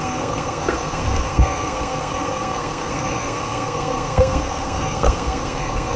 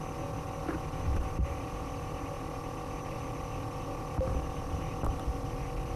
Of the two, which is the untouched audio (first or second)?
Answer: second